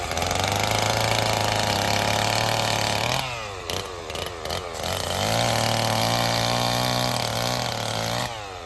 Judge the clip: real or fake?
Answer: real